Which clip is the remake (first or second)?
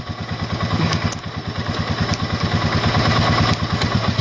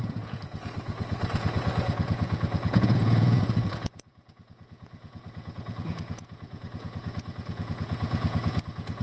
second